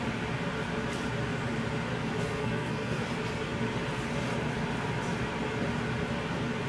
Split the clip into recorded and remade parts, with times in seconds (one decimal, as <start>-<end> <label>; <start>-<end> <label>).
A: 0.0-2.4 recorded; 2.4-3.1 remade; 3.1-6.7 recorded